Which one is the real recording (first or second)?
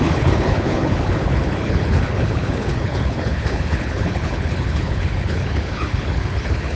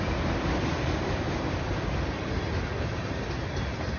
second